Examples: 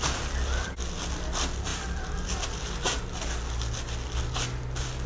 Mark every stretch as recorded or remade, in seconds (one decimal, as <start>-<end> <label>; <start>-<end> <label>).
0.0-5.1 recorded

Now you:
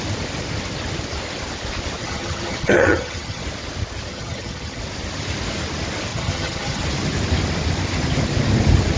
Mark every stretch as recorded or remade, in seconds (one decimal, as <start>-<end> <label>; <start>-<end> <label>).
0.0-2.0 recorded; 2.0-3.4 remade; 3.4-4.1 recorded; 4.1-4.8 remade; 4.8-6.1 recorded; 6.1-6.8 remade; 6.8-9.0 recorded

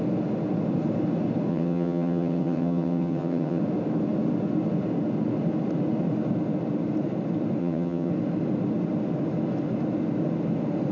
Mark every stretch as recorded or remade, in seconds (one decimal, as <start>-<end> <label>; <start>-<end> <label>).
0.0-1.5 recorded; 1.5-3.6 remade; 3.6-7.6 recorded; 7.6-8.1 remade; 8.1-10.9 recorded

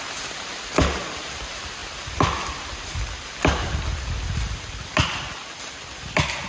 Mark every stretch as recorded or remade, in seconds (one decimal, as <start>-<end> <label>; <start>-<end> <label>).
0.0-6.5 recorded